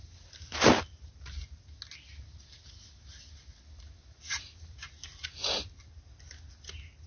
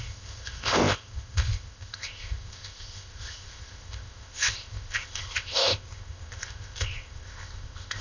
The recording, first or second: first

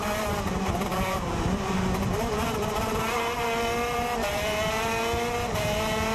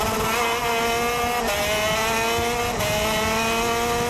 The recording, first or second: second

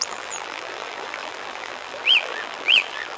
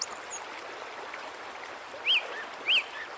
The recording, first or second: second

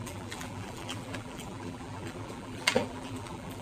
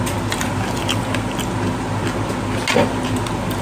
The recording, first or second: second